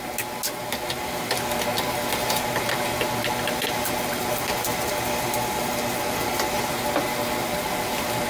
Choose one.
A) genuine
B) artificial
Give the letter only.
A